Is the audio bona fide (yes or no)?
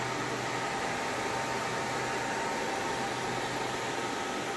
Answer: yes